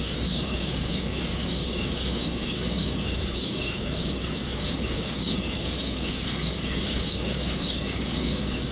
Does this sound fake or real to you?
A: fake